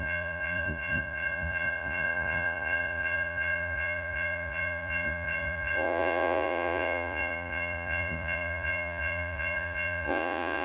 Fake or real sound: fake